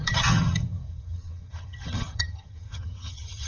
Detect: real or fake fake